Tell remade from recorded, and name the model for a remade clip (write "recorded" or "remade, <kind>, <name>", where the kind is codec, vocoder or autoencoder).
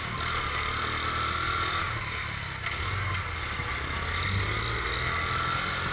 recorded